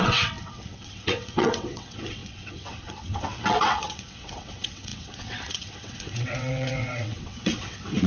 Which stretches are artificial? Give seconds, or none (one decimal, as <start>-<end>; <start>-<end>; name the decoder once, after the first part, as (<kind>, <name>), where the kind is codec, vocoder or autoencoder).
0.0-8.1 (vocoder, WaveNeXt)